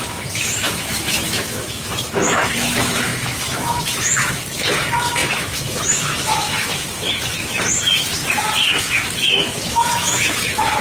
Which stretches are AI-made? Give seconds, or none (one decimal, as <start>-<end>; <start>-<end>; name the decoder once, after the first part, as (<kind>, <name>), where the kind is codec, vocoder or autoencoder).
0.0-8.2 (autoencoder, DAC-VAE); 8.8-10.8